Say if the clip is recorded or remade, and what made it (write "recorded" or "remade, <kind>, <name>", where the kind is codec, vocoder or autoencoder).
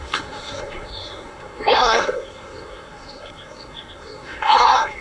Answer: remade, codec, SNAC